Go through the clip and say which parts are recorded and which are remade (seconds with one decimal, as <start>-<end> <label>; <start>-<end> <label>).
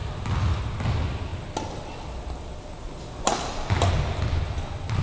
0.0-5.0 recorded